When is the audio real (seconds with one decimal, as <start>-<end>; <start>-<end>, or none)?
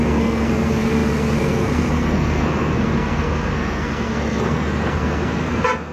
none